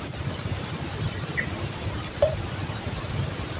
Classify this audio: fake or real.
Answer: real